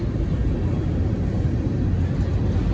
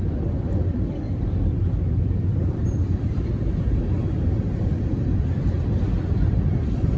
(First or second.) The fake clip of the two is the second